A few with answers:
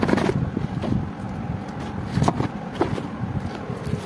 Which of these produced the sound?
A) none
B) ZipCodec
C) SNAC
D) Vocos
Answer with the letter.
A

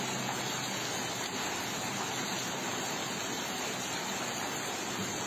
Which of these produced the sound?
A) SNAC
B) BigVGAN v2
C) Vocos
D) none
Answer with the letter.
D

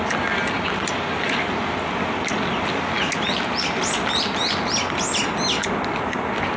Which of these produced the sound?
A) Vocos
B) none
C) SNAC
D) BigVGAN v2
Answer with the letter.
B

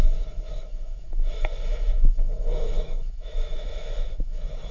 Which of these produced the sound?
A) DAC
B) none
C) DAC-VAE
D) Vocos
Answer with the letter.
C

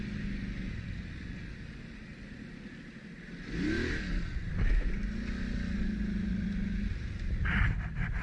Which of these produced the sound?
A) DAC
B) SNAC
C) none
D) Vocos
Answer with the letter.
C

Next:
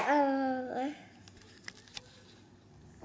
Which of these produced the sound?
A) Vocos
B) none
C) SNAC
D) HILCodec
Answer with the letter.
B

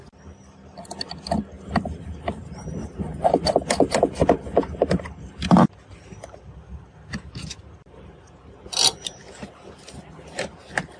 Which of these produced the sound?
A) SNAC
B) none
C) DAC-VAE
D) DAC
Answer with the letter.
B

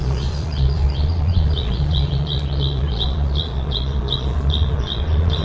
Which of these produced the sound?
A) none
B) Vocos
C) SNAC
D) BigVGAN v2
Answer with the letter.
B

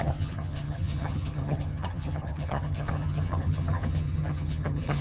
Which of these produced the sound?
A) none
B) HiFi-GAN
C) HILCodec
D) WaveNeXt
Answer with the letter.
B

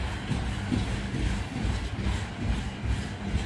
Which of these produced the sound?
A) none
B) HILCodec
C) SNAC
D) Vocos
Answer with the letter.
A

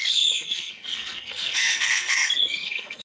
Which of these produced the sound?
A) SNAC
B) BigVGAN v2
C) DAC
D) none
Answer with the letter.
A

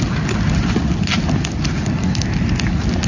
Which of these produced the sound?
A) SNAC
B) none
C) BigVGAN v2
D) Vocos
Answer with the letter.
B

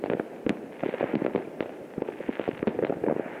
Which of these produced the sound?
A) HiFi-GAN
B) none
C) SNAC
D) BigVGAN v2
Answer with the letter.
B